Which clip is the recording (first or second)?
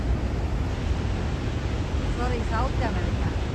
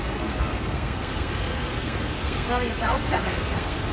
first